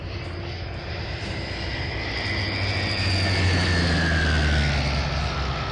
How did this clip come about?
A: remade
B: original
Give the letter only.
B